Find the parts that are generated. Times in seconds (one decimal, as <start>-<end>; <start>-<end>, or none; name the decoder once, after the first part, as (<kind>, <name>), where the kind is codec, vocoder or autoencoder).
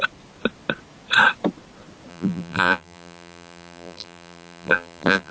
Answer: 2.1-5.3 (vocoder, BigVGAN v2)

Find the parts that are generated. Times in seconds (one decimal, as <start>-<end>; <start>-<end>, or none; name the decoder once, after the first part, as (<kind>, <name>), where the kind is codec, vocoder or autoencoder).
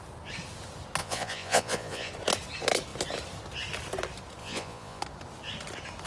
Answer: 1.0-2.1 (vocoder, Vocos); 4.4-5.0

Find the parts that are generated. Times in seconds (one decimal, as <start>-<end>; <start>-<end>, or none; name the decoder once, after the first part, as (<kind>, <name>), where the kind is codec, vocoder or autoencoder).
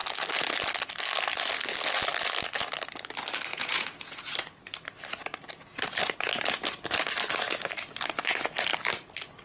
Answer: 3.5-4.2 (vocoder, Vocos)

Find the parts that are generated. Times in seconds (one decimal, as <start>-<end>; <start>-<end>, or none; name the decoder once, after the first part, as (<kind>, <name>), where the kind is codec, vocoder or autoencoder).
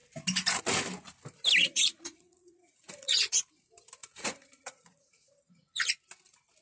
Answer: 1.6-3.4 (vocoder, Vocos); 4.0-5.9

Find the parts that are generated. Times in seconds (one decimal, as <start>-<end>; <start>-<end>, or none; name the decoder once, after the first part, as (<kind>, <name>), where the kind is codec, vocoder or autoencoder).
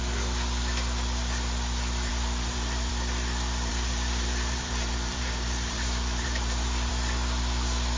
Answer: 2.1-2.9 (vocoder, BigVGAN v2); 3.7-6.9